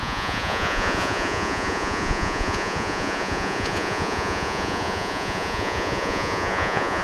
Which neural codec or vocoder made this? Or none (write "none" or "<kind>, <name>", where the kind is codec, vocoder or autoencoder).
vocoder, Vocos